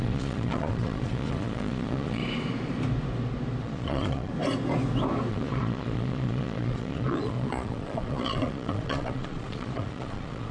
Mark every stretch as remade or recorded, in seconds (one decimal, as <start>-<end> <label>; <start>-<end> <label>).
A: 0.0-2.2 remade; 2.2-3.6 recorded; 3.6-4.3 remade; 4.3-5.3 recorded; 5.3-10.5 remade